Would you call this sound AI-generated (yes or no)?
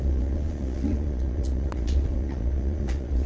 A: yes